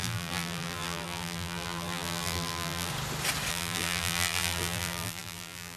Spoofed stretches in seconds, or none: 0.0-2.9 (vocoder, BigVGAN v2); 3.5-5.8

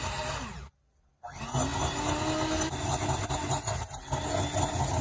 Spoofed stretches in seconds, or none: none

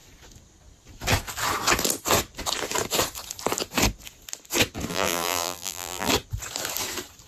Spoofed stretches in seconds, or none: 4.9-6.1 (vocoder, BigVGAN v2)

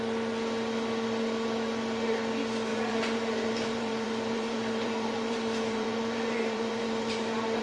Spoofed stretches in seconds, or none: 2.7-7.6 (vocoder, BigVGAN v2)

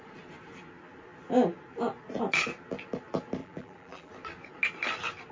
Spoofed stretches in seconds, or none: 3.4-4.1 (vocoder, BigVGAN v2)

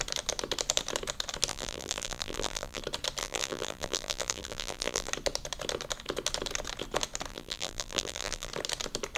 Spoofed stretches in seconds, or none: 1.5-2.8 (vocoder, BigVGAN v2); 3.2-5.1; 7.3-8.5